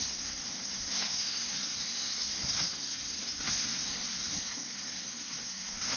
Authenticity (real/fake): fake